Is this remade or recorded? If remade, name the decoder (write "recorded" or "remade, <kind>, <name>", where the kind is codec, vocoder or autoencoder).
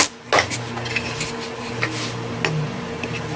recorded